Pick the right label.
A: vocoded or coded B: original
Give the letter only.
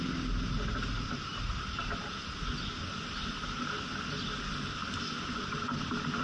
B